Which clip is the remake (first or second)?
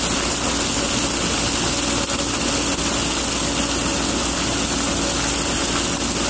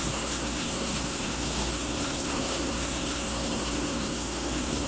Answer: second